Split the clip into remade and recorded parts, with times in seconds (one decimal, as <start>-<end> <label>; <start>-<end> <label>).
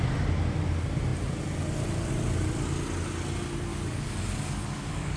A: 0.0-3.7 recorded; 3.7-5.2 remade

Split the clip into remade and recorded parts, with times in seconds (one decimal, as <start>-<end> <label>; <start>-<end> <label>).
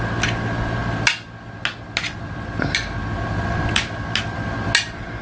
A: 0.0-5.2 recorded